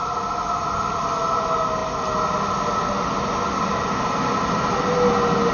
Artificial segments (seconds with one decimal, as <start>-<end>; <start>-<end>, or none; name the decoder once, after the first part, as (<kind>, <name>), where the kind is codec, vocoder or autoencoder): none